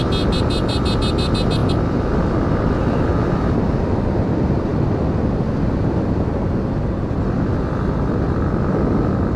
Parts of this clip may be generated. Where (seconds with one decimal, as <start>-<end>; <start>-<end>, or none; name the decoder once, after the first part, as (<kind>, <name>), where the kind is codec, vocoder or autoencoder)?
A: none